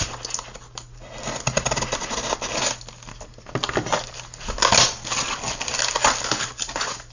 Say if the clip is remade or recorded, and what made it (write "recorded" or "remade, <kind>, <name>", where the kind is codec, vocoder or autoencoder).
recorded